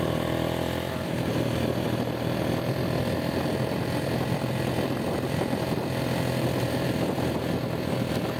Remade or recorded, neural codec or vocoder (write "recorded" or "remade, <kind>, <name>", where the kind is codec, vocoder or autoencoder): remade, vocoder, BigVGAN v2